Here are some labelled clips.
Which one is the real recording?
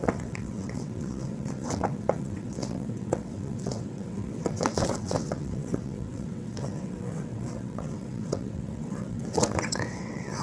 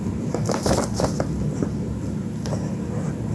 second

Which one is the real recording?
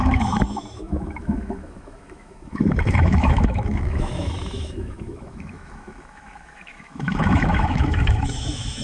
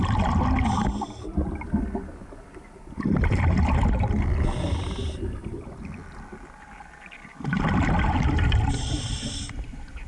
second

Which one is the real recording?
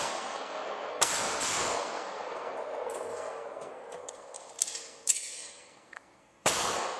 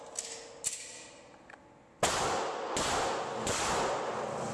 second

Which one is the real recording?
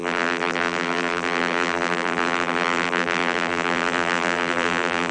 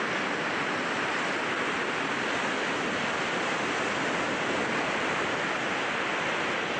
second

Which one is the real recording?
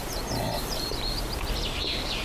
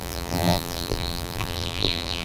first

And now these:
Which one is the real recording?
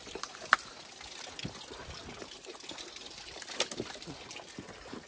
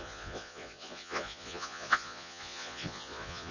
first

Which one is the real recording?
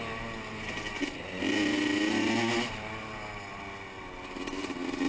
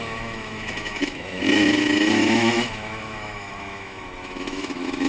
first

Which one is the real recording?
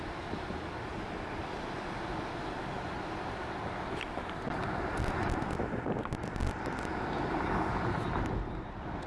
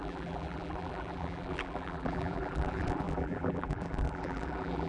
first